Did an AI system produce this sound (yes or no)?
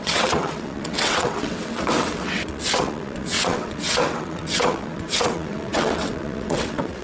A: yes